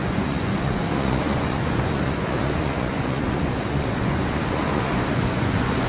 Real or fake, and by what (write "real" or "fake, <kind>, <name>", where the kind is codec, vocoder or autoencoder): fake, vocoder, Vocos